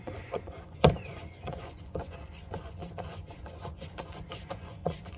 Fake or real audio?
fake